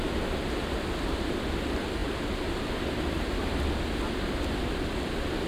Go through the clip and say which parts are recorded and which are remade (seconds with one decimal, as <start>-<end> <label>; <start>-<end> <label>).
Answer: 0.0-2.0 recorded; 2.0-2.7 remade; 2.7-5.5 recorded